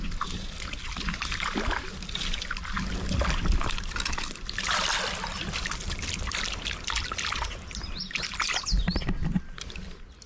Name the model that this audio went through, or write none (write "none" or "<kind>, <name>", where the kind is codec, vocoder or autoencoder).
none